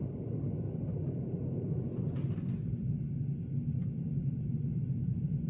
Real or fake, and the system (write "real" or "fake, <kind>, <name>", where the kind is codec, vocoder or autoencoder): fake, vocoder, BigVGAN v2